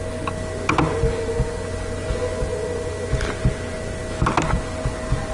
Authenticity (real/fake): real